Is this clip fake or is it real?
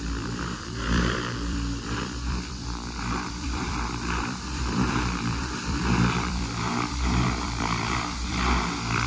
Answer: fake